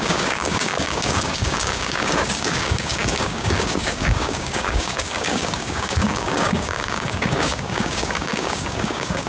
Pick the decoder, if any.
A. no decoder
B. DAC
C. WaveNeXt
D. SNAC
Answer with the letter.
B